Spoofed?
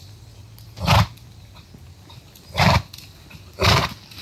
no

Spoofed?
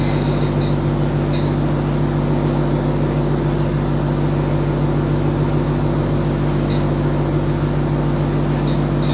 no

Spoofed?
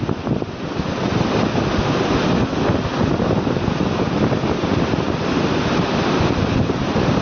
no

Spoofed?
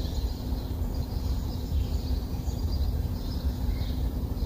yes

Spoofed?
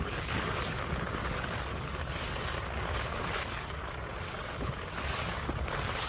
yes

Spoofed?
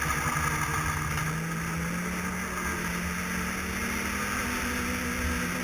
no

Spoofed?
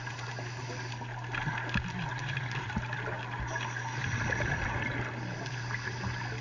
no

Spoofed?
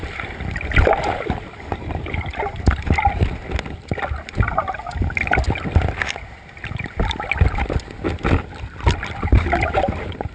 no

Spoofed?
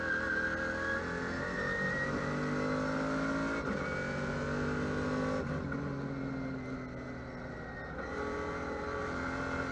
no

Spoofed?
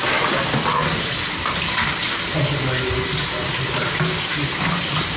no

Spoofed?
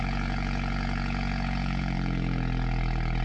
yes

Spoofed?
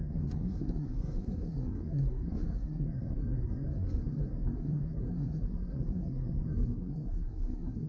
yes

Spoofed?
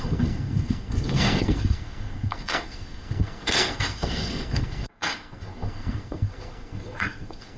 yes